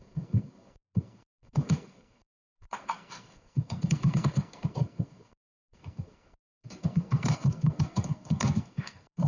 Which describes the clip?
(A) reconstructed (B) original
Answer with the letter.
A